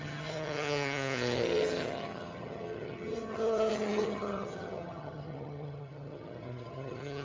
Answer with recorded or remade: remade